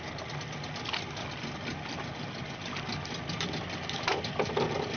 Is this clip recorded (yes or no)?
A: yes